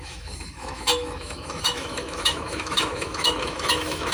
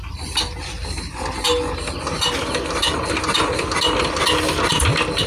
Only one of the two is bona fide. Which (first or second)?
second